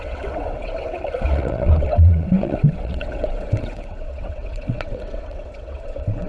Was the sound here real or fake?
fake